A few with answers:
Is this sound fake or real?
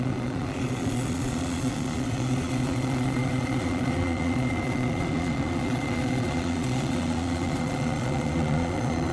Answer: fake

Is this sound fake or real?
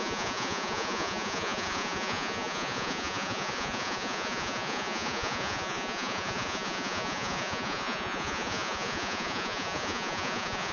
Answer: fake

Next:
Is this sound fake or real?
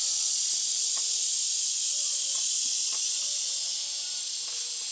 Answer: real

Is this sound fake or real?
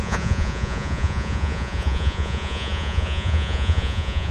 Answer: fake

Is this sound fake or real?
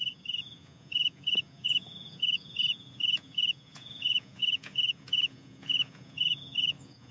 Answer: fake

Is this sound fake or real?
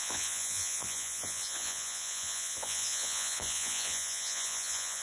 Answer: fake